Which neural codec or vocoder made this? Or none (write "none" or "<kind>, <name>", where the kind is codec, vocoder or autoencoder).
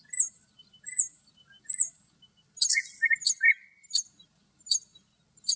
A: none